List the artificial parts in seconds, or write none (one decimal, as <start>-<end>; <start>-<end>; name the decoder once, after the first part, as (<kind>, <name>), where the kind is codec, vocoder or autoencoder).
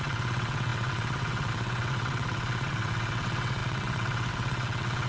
0.0-5.1 (vocoder, WaveNeXt)